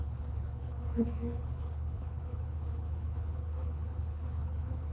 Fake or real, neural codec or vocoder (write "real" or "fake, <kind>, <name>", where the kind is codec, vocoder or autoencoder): fake, codec, HILCodec